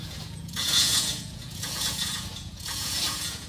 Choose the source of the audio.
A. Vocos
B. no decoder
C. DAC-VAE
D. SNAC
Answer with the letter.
A